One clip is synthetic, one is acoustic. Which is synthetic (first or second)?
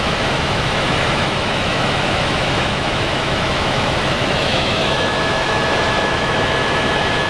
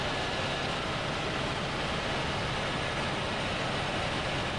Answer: first